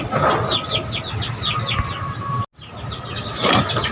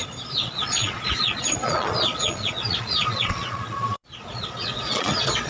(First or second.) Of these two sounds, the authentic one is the first